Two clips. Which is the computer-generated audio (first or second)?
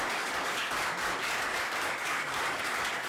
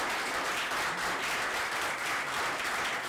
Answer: first